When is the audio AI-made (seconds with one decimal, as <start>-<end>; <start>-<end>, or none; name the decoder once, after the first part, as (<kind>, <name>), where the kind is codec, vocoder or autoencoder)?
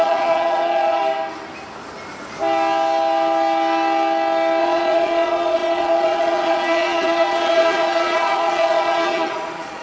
0.0-1.0 (vocoder, Vocos); 4.6-9.8